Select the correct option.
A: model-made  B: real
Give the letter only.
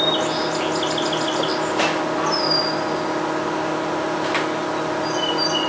B